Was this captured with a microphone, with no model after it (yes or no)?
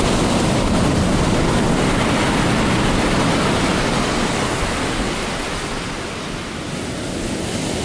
yes